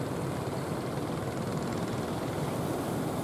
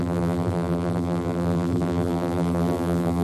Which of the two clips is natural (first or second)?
first